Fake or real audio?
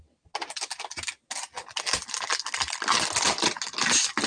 real